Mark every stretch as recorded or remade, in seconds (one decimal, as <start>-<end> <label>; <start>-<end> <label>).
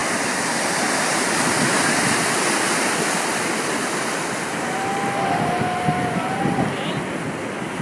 0.0-4.5 remade; 4.5-7.8 recorded